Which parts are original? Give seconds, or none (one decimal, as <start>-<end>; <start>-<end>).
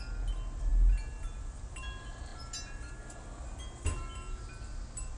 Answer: 0.0-5.2